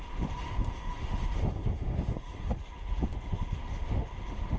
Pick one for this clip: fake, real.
fake